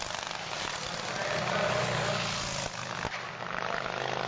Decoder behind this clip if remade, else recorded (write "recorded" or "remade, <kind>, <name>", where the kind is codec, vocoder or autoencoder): recorded